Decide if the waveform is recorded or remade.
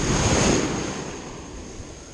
recorded